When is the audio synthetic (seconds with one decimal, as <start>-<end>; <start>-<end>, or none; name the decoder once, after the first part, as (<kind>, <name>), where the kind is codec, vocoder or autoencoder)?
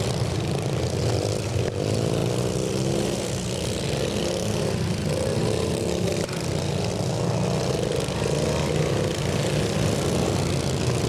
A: none